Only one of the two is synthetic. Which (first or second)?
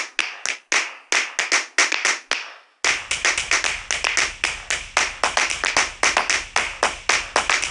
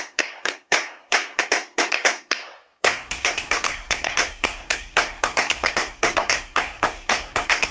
second